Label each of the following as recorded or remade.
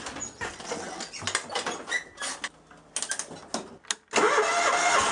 recorded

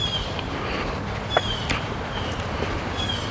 remade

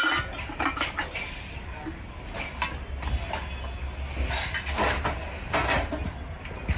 recorded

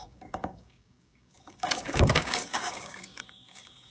remade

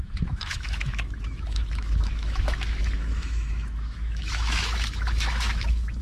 remade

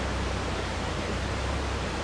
remade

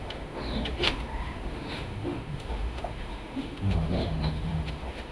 remade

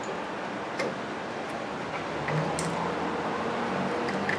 recorded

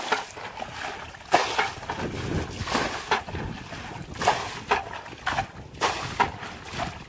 recorded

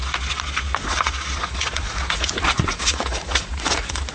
remade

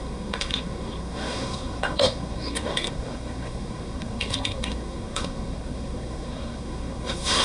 remade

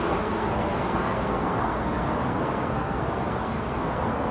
remade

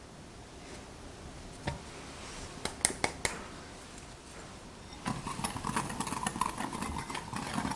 recorded